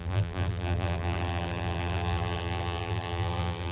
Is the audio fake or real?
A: fake